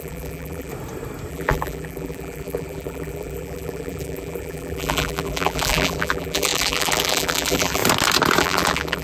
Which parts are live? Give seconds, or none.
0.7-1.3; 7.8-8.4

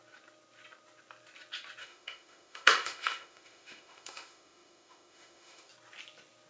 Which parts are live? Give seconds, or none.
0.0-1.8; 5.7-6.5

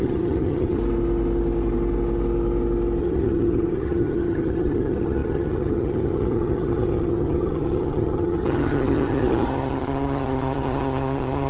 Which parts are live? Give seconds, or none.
0.8-3.0

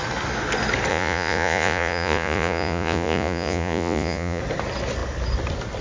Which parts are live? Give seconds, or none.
0.0-0.9; 4.4-5.8

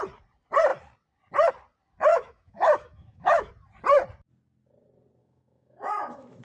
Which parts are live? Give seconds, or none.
0.0-2.1; 3.5-5.2